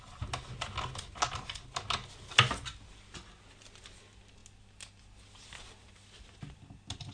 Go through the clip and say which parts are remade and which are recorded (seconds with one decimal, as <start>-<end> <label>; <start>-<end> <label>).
0.0-7.1 recorded